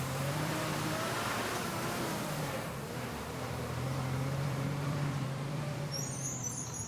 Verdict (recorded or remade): remade